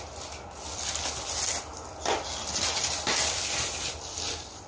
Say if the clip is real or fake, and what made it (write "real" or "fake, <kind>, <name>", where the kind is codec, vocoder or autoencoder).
real